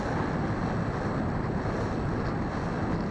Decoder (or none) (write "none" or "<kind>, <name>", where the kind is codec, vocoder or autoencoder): none